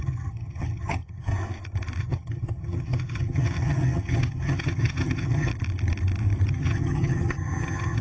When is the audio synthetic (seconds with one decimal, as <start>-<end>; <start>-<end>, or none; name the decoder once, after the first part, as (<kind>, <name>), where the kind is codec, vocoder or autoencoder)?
0.0-1.3 (vocoder, HiFi-GAN); 2.0-5.5; 6.5-8.0